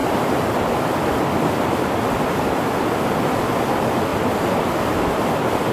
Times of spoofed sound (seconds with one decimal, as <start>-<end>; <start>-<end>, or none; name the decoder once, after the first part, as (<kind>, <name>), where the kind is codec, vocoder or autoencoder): none

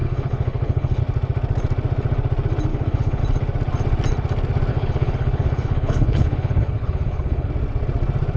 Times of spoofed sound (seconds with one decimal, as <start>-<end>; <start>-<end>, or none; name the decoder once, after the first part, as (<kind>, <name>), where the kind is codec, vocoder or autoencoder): 0.0-1.0 (codec, HILCodec); 2.7-3.2; 4.7-7.5

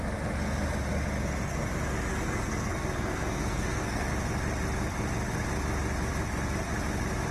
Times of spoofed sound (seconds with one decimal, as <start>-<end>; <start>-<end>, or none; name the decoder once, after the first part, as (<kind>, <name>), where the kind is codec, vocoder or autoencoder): 2.1-4.1 (codec, SNAC)

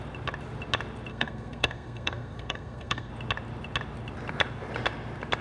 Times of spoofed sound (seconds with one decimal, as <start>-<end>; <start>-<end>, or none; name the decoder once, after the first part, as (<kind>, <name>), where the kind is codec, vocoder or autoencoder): 1.1-3.1 (codec, SNAC)

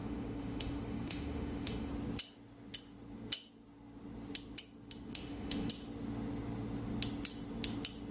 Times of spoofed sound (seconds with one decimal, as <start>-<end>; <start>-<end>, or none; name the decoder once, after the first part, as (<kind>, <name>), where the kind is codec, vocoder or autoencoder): 0.0-1.9 (autoencoder, DAC-VAE); 5.1-5.7